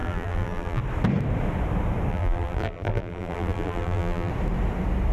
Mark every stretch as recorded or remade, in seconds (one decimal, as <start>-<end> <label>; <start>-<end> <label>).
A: 0.0-0.8 remade; 0.8-2.1 recorded; 2.1-4.3 remade; 4.3-5.1 recorded